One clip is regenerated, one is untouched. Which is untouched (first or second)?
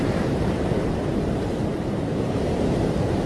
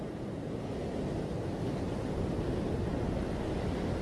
second